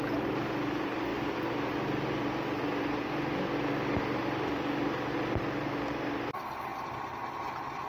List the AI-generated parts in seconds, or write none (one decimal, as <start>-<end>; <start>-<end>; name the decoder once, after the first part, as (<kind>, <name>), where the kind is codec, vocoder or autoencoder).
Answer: none